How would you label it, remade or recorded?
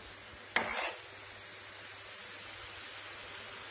recorded